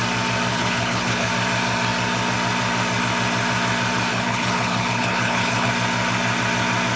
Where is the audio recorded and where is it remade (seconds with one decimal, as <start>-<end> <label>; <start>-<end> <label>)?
0.0-0.5 recorded; 0.5-1.3 remade; 1.3-4.1 recorded; 4.1-5.7 remade; 5.7-7.0 recorded